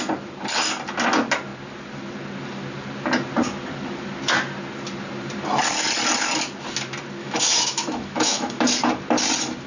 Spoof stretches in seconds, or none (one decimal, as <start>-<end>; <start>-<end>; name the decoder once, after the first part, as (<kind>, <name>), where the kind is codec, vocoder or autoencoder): 7.2-8.6 (autoencoder, DAC-VAE)